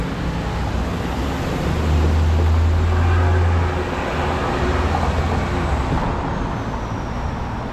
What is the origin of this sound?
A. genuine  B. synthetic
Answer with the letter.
A